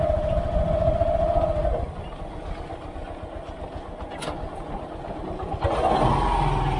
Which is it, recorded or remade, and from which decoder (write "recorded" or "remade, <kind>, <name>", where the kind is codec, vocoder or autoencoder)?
recorded